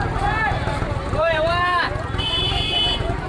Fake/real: fake